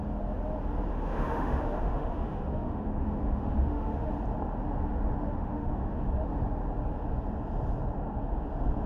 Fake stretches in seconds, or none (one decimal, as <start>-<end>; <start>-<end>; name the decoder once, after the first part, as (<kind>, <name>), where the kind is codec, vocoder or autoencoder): 0.9-4.1 (autoencoder, DAC-VAE); 5.2-6.1